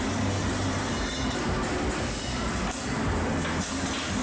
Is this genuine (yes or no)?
yes